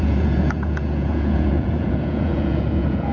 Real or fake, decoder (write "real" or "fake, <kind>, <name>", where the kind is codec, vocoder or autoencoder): fake, vocoder, Vocos